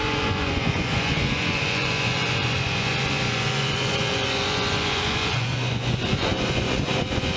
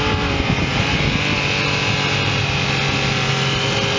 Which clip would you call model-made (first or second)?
first